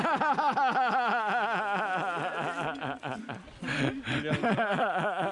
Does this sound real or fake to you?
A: real